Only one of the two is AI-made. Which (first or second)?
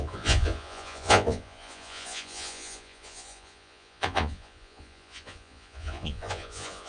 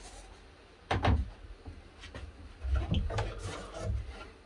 first